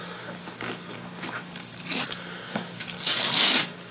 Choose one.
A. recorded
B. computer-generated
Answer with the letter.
B